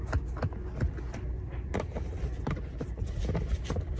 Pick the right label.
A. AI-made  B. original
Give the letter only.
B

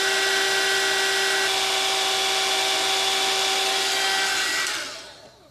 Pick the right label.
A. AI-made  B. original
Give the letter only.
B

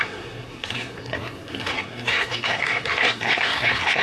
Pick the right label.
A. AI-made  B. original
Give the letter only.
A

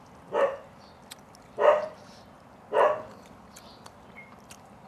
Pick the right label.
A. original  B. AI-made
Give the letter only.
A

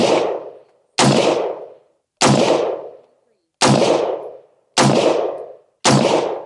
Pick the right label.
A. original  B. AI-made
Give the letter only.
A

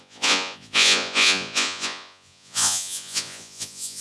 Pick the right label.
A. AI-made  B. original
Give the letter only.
A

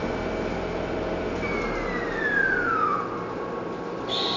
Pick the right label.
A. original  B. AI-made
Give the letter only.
A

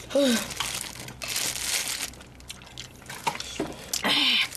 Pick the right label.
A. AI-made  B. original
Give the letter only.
B